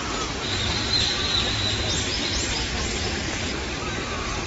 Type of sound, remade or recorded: recorded